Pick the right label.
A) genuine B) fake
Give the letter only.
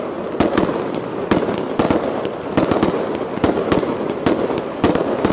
A